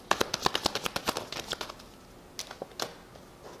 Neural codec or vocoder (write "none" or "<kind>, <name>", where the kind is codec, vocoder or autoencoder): none